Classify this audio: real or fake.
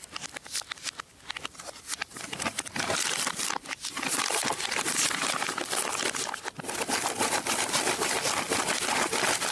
fake